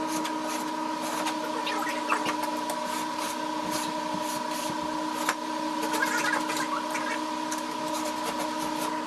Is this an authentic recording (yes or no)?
yes